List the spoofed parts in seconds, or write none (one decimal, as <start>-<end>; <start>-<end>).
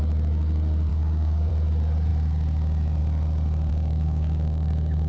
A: 0.9-1.5; 3.7-5.1